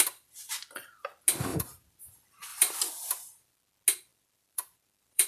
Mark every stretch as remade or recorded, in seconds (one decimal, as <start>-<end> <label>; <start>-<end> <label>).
0.0-1.5 recorded; 1.5-2.0 remade; 2.0-2.5 recorded; 2.5-3.6 remade; 3.6-4.1 recorded; 4.1-5.3 remade

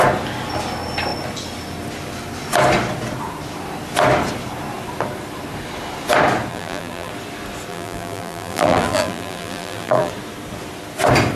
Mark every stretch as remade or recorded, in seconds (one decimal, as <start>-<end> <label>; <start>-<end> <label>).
0.0-6.5 recorded; 6.5-7.1 remade; 7.1-7.7 recorded; 7.7-10.1 remade; 10.1-11.4 recorded

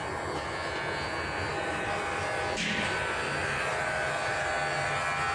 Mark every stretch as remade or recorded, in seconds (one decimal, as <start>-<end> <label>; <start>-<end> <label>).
0.0-1.5 recorded; 1.5-2.0 remade; 2.0-3.4 recorded; 3.4-4.5 remade; 4.5-5.3 recorded

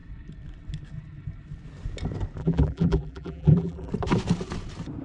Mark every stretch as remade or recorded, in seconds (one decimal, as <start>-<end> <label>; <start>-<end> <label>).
0.0-2.4 recorded; 2.4-3.9 remade; 3.9-5.0 recorded

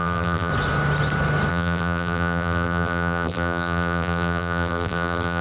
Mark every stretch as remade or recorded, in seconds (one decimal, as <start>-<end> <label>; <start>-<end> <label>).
0.0-0.5 remade; 0.5-1.5 recorded; 1.5-5.4 remade

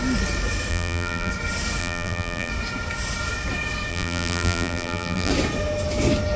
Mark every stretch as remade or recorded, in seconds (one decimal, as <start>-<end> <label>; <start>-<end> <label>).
0.0-0.7 recorded; 0.7-1.3 remade; 1.3-1.8 recorded; 1.8-2.5 remade; 2.5-3.9 recorded; 3.9-5.3 remade; 5.3-6.4 recorded

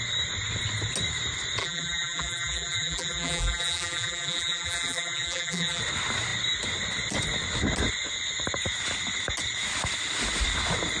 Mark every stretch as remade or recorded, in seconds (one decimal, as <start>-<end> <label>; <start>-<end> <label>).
0.0-1.6 recorded; 1.6-5.8 remade; 5.8-11.0 recorded